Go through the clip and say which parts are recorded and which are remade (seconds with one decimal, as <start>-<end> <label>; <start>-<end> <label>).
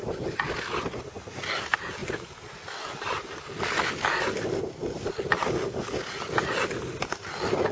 0.0-2.0 recorded; 2.0-2.5 remade; 2.5-7.7 recorded